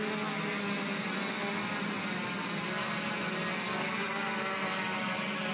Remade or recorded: recorded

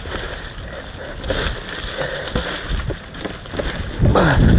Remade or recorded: recorded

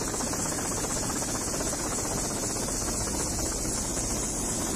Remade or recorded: recorded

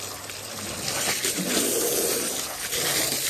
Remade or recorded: remade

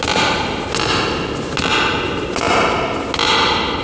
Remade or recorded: recorded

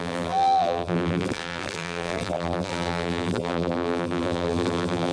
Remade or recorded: remade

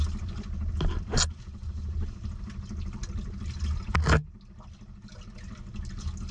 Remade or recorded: recorded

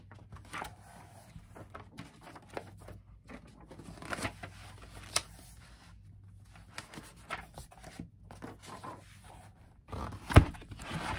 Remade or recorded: recorded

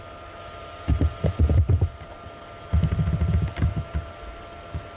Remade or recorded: remade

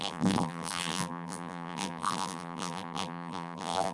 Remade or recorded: remade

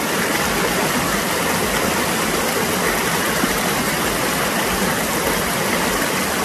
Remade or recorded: recorded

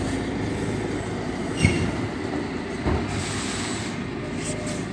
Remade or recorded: recorded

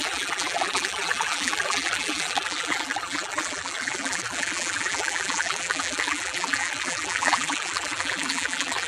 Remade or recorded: remade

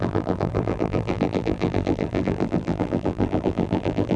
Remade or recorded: remade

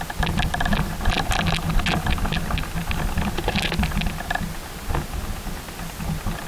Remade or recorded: recorded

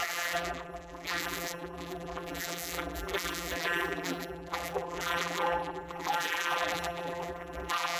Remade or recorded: remade